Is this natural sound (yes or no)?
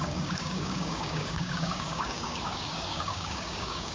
no